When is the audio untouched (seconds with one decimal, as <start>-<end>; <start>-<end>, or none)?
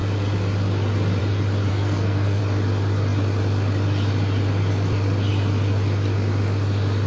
0.0-1.7; 2.4-7.1